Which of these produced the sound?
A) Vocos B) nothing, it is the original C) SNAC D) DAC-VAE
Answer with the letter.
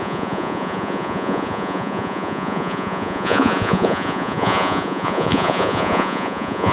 A